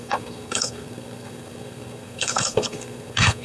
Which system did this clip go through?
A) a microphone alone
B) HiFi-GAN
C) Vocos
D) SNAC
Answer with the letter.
D